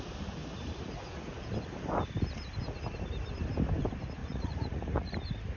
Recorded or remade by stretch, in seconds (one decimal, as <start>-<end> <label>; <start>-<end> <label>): 0.0-4.2 recorded; 4.2-5.1 remade; 5.1-5.6 recorded